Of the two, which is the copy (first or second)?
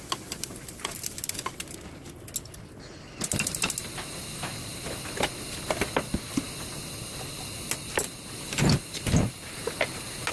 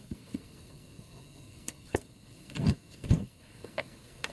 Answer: second